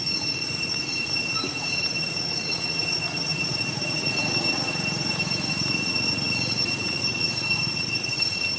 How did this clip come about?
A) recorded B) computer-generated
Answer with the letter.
B